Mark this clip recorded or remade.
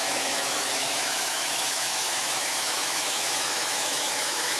remade